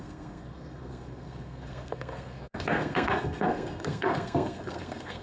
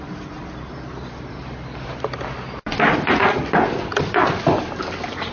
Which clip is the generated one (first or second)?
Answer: first